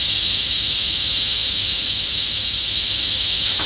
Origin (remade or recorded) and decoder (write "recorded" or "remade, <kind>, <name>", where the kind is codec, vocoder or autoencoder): remade, autoencoder, DAC-VAE